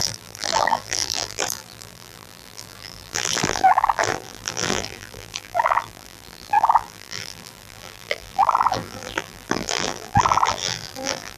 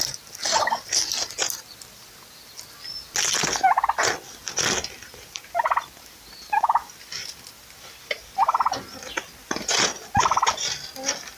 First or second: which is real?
second